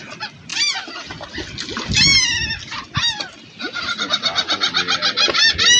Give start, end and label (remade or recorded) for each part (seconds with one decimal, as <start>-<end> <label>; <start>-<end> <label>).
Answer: 0.0-5.8 recorded